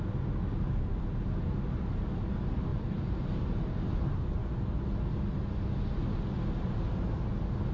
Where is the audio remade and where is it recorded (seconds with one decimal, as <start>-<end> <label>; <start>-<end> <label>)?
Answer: 0.0-2.7 recorded; 2.7-3.5 remade; 3.5-7.7 recorded